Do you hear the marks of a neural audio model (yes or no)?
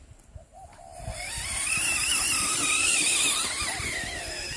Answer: no